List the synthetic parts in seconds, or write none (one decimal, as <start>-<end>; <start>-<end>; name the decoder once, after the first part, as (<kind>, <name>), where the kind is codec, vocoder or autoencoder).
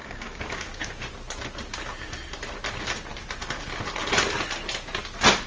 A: 0.0-1.0 (codec, DAC)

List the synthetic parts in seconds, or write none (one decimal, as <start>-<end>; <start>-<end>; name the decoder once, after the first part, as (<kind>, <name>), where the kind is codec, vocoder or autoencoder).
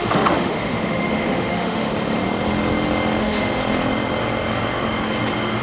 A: 0.0-1.9 (autoencoder, DAC-VAE); 3.2-3.6